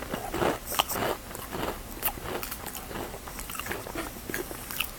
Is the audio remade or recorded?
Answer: recorded